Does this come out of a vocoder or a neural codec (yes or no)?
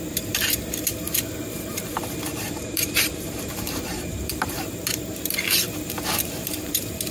yes